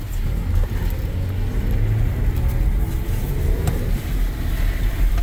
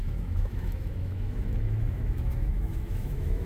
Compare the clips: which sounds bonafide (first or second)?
first